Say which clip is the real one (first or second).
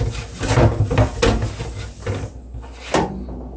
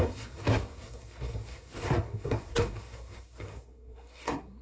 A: first